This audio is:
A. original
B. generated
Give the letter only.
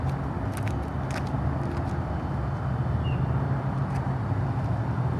A